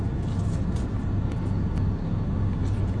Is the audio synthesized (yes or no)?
no